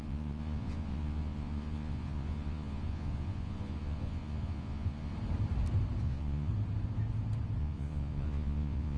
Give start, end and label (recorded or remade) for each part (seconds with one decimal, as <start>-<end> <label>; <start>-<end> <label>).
0.0-5.1 remade; 5.1-6.0 recorded; 6.0-6.5 remade; 6.5-7.6 recorded; 7.6-9.0 remade